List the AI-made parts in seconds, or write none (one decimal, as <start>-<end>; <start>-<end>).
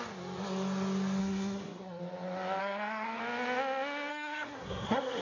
1.2-2.0; 2.6-3.2; 4.1-5.2